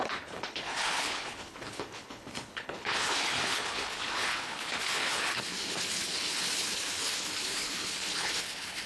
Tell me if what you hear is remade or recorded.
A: remade